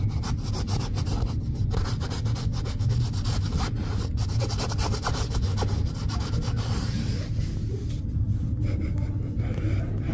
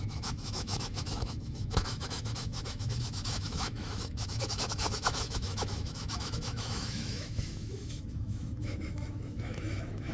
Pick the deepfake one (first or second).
second